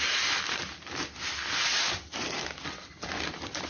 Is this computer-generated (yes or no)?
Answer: no